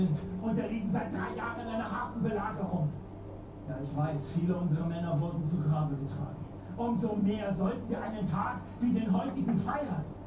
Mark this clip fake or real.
real